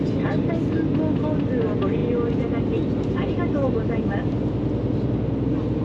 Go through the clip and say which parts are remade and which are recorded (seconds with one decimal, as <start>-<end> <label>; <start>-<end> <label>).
0.0-5.8 recorded